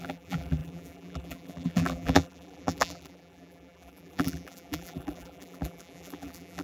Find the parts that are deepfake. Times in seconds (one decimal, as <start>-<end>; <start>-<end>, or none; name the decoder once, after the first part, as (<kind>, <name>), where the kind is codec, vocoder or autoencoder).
0.0-6.6 (vocoder, BigVGAN v2)